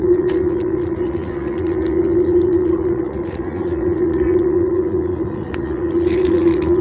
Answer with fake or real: fake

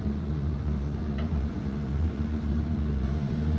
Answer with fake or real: fake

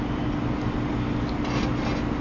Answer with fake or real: real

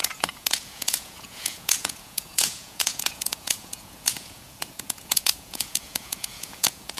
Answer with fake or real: fake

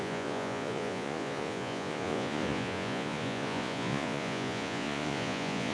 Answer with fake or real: fake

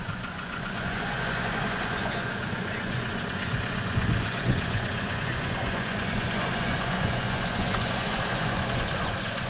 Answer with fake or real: fake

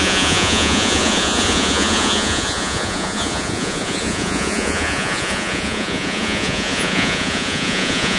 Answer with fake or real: fake